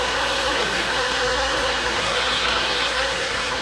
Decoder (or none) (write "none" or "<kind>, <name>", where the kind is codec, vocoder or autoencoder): codec, SNAC